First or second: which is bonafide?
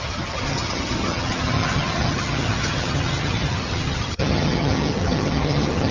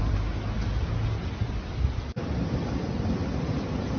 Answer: second